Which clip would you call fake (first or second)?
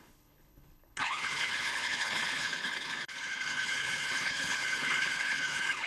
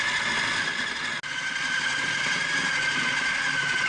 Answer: first